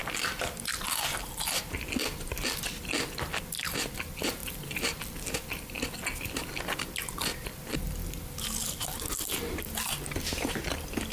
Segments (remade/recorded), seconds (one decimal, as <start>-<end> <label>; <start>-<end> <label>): 0.0-11.1 recorded